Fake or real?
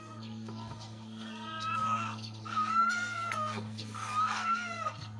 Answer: fake